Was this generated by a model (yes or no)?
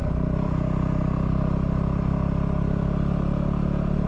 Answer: no